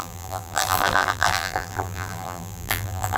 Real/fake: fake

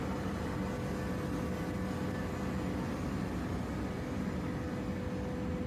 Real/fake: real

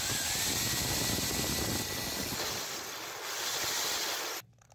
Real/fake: real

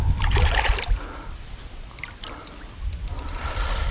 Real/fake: fake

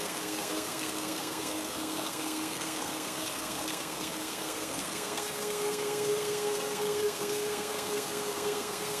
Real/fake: fake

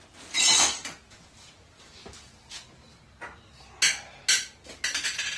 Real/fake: real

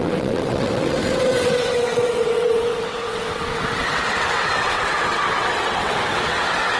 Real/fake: fake